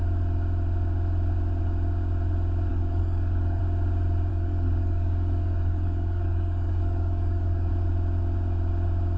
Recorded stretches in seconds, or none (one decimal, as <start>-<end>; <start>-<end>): 0.0-2.7; 3.6-4.3; 7.7-9.2